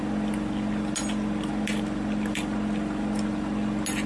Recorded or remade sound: recorded